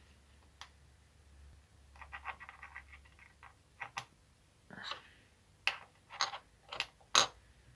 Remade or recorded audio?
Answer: recorded